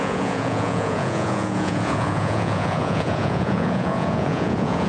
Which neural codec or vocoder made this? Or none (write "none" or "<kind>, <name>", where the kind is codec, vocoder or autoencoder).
vocoder, Vocos